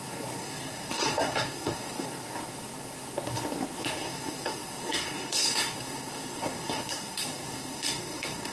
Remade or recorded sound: remade